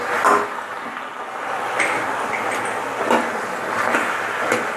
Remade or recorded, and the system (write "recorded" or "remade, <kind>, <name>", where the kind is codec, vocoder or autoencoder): recorded